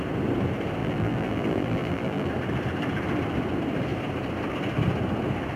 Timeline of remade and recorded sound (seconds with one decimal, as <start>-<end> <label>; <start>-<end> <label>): 0.0-0.8 recorded; 0.8-2.3 remade; 2.3-5.6 recorded

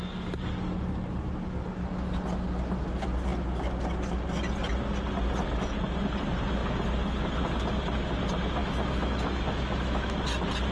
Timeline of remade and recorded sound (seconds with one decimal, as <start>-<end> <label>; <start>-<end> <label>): 0.0-8.6 recorded; 8.6-10.2 remade; 10.2-10.7 recorded

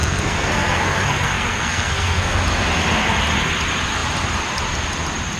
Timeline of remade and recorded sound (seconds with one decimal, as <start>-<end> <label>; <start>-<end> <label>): 0.0-2.4 remade; 2.4-5.4 recorded